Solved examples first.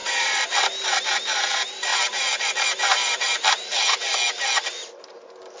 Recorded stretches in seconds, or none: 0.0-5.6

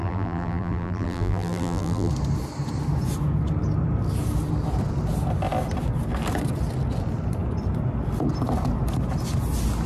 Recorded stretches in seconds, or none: 2.1-9.9

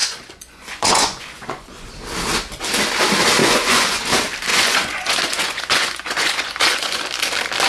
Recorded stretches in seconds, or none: 1.9-3.4; 4.0-4.5; 7.0-7.7

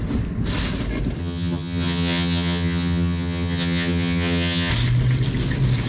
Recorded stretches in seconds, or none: 0.0-1.2; 4.7-5.9

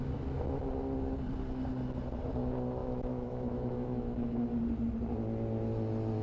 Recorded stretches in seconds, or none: 0.0-2.8; 4.6-6.2

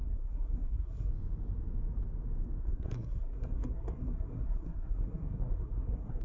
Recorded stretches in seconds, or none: 1.1-2.6

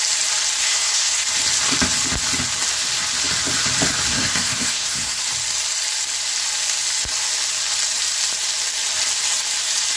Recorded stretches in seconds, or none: 0.0-0.6; 1.2-4.1; 5.2-10.0